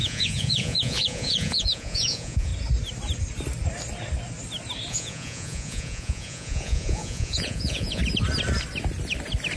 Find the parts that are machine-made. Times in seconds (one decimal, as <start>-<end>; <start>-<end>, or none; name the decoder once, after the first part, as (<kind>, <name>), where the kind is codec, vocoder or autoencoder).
0.0-2.5 (vocoder, Vocos); 4.9-8.0